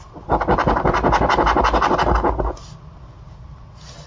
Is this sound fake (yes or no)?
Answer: no